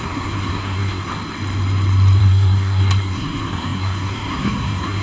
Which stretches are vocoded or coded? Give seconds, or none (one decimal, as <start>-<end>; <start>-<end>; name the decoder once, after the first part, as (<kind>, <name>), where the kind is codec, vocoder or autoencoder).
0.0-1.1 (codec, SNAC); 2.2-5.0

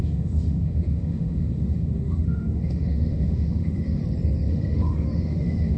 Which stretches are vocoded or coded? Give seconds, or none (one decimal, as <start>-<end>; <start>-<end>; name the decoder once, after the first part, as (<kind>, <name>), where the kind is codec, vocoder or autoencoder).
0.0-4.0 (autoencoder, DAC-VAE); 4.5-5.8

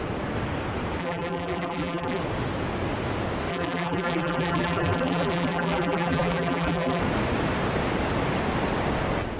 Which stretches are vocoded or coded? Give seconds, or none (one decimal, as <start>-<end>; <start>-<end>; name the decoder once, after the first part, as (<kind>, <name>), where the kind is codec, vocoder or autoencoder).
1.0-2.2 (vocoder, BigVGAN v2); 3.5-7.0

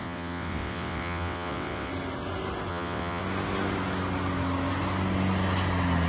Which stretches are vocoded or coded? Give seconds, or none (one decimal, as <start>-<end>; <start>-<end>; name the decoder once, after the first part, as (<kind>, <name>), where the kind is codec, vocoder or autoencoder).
0.0-1.9 (vocoder, WaveNeXt); 2.7-3.2

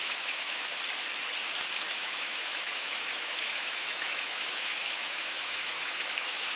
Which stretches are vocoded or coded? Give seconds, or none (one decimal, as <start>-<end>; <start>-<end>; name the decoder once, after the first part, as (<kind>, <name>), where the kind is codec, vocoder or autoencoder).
0.0-0.7 (autoencoder, DAC-VAE); 1.9-6.6

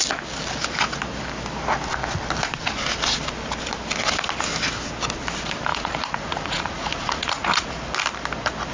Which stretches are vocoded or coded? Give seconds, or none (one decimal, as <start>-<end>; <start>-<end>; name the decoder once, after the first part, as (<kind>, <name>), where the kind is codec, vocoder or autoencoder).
5.7-7.7 (vocoder, Vocos)

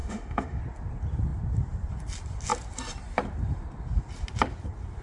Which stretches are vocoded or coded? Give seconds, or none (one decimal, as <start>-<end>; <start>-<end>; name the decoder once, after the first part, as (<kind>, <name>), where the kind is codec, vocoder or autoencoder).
0.0-0.6 (autoencoder, DAC-VAE)